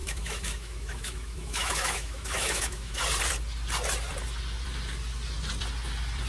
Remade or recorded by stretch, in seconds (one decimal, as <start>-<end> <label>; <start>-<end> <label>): 0.0-3.0 remade; 3.0-6.3 recorded